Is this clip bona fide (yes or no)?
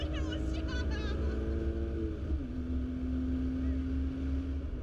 yes